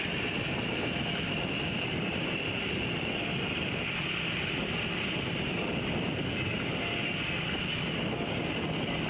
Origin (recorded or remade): recorded